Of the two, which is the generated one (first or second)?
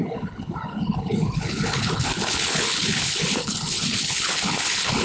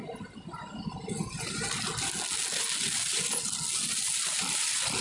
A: first